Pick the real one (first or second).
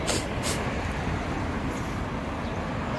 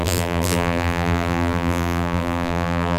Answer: first